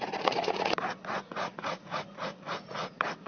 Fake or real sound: fake